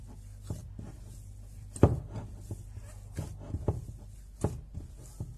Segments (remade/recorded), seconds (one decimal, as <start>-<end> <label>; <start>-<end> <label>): 0.0-5.4 recorded